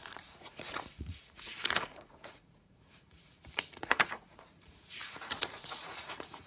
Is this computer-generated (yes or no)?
yes